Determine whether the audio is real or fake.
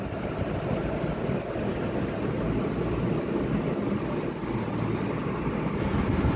real